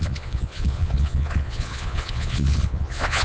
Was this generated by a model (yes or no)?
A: yes